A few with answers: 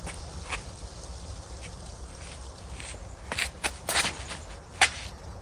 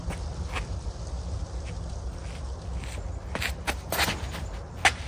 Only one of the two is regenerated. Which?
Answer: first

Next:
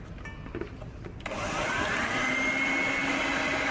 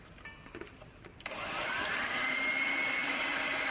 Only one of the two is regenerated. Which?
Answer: second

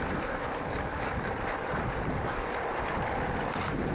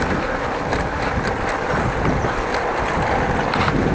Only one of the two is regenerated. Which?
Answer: first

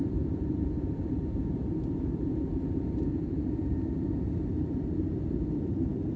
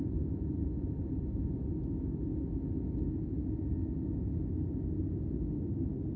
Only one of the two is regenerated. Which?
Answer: first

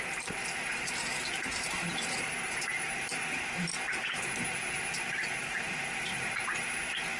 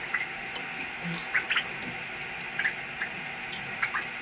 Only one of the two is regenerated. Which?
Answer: first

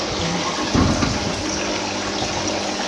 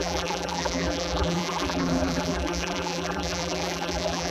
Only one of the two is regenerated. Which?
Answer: second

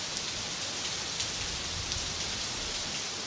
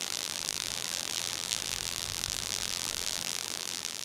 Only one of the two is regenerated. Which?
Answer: second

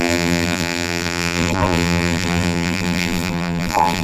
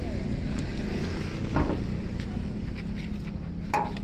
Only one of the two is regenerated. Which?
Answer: first